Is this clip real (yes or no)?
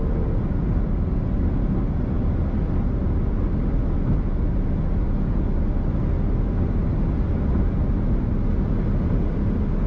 yes